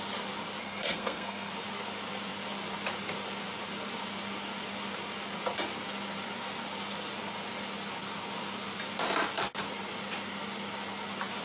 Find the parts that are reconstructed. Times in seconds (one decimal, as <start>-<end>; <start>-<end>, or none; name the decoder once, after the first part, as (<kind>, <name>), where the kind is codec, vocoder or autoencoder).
0.6-1.5 (codec, SNAC)